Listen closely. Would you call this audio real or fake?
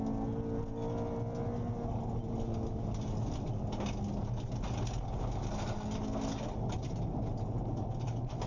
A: real